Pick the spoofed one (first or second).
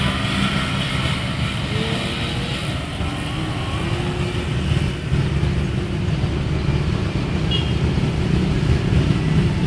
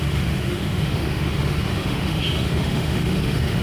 second